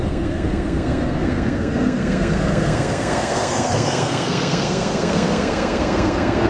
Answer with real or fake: fake